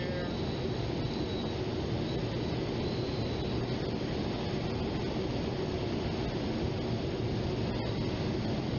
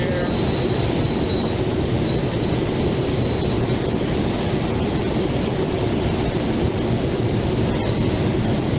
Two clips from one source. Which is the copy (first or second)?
second